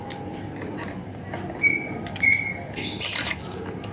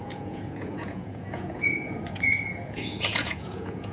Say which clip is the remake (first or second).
second